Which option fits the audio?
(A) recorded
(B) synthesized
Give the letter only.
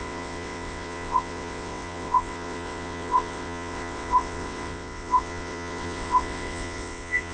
B